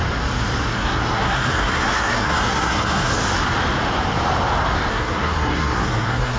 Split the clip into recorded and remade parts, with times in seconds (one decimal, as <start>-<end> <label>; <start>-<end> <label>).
0.0-0.7 recorded; 0.7-3.2 remade; 3.2-4.9 recorded; 4.9-6.4 remade